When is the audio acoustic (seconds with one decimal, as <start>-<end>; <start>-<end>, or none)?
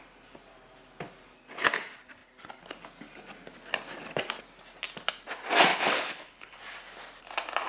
0.0-5.7; 6.6-7.7